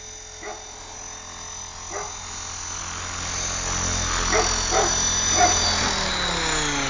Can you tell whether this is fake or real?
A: real